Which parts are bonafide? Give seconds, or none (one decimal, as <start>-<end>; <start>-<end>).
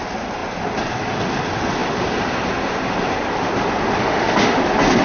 0.0-4.0; 4.6-5.0